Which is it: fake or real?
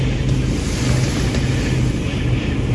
fake